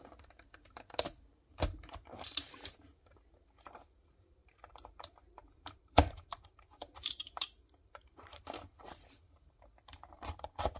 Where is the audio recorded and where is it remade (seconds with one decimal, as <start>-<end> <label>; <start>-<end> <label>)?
0.0-10.8 remade